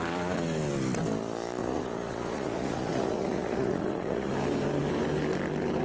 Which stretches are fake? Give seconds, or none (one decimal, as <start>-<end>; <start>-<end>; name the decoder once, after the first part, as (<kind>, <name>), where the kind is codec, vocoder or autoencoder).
1.6-4.3 (vocoder, Vocos)